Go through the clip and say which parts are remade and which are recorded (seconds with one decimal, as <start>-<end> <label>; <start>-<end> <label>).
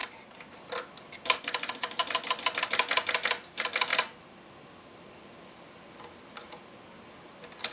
0.0-7.7 recorded